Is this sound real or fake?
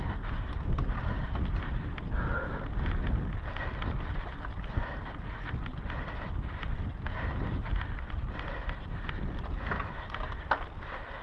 real